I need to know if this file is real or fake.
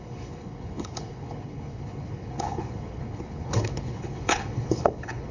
fake